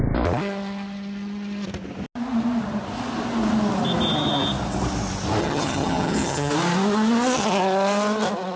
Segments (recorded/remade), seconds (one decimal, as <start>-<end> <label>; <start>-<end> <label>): 0.0-5.4 recorded; 5.4-6.5 remade; 6.5-8.6 recorded